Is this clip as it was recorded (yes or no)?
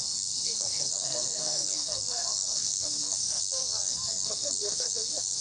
no